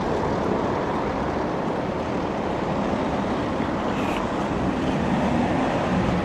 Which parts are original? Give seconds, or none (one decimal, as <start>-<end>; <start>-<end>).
3.4-4.1